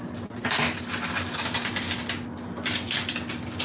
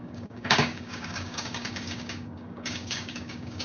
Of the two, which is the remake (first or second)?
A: second